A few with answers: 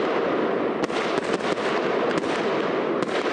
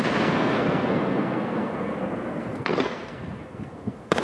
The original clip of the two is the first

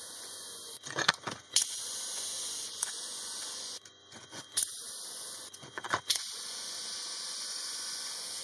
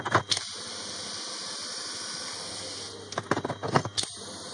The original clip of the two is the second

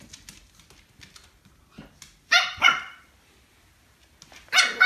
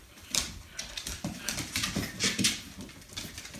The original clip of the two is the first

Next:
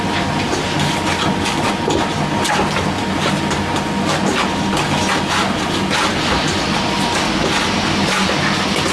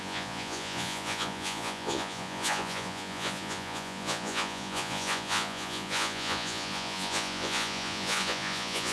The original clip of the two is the first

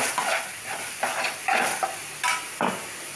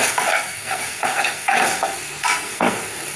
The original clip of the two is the first